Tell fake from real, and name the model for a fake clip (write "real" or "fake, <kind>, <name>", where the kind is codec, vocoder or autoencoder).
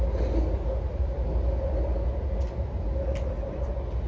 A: real